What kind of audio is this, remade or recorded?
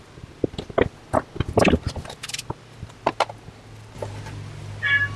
recorded